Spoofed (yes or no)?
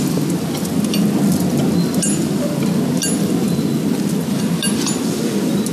no